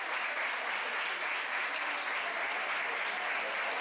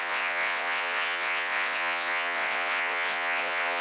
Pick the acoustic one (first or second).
first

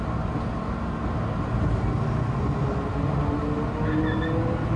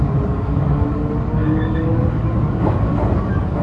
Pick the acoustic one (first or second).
first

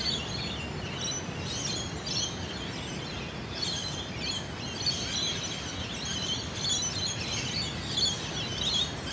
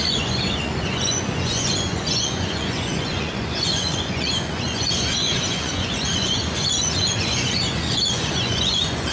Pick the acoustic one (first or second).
first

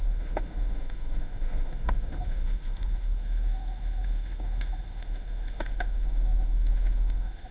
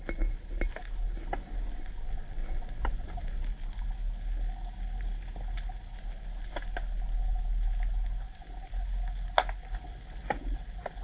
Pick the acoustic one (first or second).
second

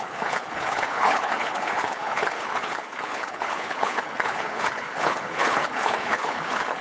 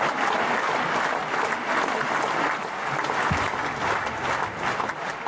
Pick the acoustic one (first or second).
second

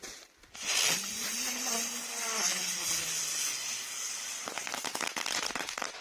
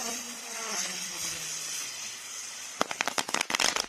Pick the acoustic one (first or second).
first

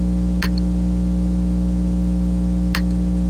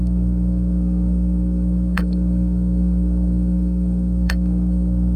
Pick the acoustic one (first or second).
first